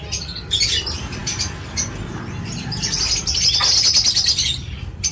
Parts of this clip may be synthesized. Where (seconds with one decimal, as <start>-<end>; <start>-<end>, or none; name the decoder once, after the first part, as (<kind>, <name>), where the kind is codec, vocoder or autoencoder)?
none